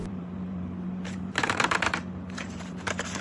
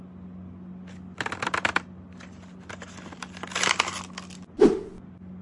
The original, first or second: second